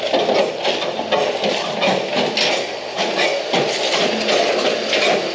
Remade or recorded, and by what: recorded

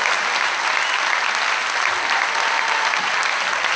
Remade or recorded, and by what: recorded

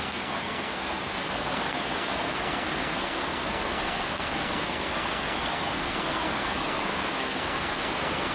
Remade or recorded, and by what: remade, codec, SNAC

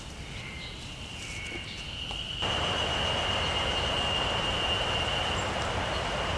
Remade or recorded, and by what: recorded